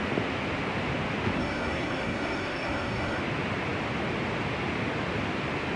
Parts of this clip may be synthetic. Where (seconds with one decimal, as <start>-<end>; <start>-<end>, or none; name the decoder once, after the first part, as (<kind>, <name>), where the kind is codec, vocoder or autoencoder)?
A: 1.4-3.2 (codec, SNAC)